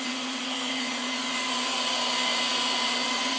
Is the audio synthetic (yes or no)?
yes